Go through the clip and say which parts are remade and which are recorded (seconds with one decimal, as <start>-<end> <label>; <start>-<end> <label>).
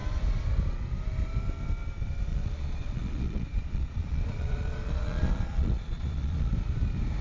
0.0-2.3 recorded; 2.3-6.5 remade; 6.5-7.2 recorded